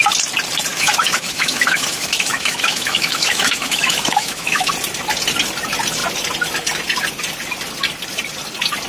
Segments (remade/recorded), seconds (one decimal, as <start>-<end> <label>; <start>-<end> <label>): 0.0-0.7 recorded; 0.7-4.7 remade; 4.7-8.9 recorded